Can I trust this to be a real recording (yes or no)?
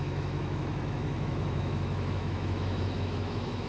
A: no